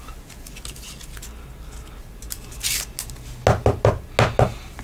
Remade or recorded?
recorded